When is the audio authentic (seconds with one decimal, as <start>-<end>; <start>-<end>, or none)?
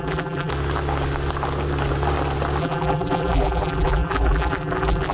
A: 0.5-2.6